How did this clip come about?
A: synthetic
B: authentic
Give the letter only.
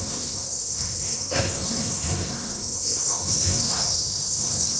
A